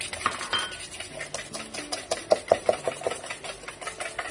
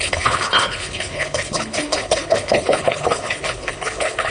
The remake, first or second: second